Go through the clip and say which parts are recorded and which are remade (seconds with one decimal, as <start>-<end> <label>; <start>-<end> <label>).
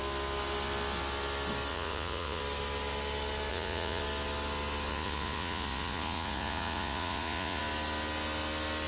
0.0-1.7 recorded; 1.7-2.4 remade; 2.4-3.5 recorded; 3.5-4.0 remade; 4.0-4.9 recorded; 4.9-7.6 remade; 7.6-8.9 recorded